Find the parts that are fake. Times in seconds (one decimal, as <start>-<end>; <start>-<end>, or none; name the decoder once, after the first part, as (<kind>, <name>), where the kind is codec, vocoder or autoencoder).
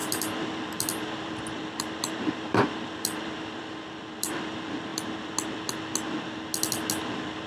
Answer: 0.0-4.9 (vocoder, BigVGAN v2); 7.1-7.5